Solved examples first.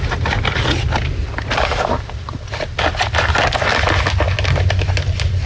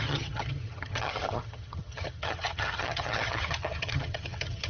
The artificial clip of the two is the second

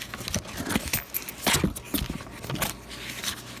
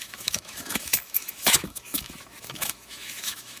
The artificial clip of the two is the second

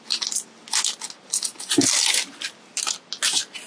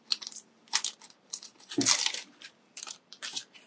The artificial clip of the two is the second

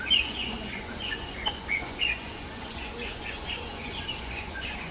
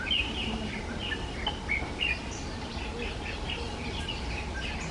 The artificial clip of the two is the first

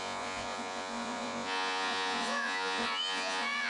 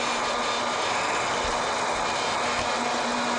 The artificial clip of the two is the first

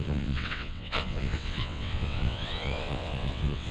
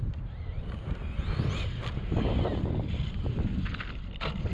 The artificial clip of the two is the first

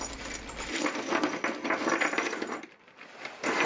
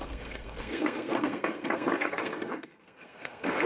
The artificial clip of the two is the second